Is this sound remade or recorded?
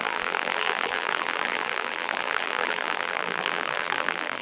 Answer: remade